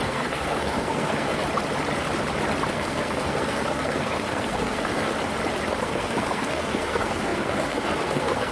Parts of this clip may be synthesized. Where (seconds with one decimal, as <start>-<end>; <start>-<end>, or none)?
0.0-1.4; 2.7-5.1; 5.8-8.5